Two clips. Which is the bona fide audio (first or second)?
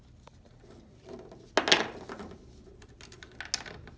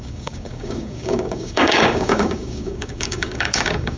first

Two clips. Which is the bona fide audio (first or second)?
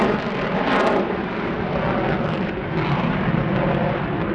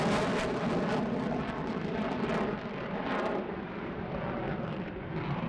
first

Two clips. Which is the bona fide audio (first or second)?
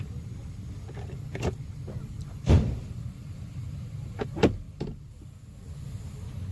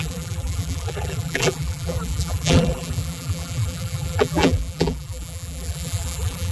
first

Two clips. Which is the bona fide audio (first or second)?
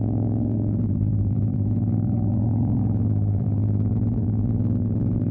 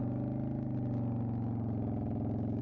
second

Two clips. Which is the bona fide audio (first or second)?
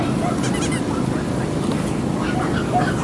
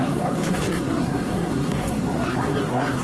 first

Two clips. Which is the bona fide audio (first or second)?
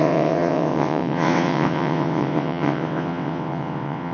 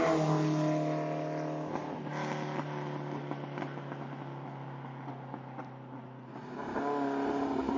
second